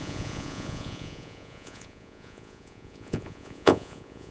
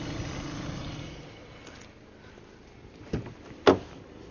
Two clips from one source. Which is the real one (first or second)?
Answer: second